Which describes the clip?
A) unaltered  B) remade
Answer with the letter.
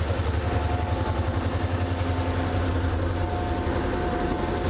A